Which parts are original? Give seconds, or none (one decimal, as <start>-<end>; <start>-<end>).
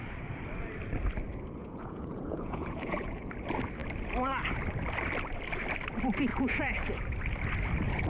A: 0.0-1.6; 3.3-6.3; 7.0-8.1